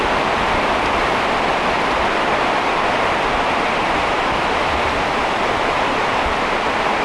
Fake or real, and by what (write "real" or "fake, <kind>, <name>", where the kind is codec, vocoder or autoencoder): real